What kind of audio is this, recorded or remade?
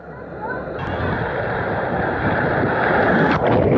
recorded